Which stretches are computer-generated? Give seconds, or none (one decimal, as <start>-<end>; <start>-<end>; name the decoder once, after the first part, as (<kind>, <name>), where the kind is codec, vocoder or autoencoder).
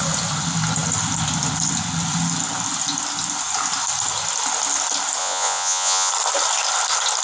5.2-6.1 (vocoder, Vocos)